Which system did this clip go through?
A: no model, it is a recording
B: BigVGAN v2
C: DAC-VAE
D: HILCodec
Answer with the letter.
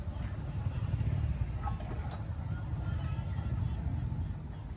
A